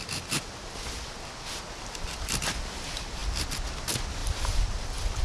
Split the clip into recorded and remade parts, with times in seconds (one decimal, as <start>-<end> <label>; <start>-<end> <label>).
0.0-5.2 recorded